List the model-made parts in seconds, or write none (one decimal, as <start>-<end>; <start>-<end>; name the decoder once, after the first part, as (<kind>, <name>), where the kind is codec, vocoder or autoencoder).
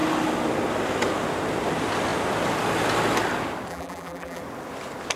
3.7-4.4 (vocoder, BigVGAN v2)